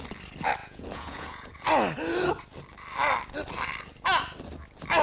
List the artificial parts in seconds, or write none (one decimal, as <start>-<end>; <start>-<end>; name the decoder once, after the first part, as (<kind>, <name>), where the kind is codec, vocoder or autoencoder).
0.6-1.5 (vocoder, Vocos)